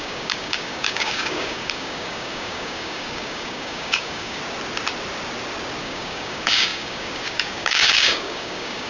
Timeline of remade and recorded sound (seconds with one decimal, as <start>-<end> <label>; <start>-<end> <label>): 0.0-4.4 remade; 4.4-5.8 recorded; 5.8-8.9 remade